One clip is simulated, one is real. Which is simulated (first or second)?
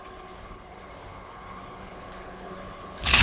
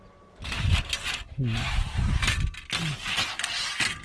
first